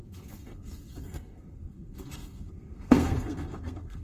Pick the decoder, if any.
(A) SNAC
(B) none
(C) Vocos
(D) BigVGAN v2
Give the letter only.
A